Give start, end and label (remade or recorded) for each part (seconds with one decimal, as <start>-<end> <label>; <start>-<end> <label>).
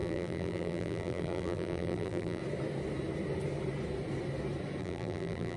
0.0-2.4 remade; 2.4-4.8 recorded; 4.8-5.6 remade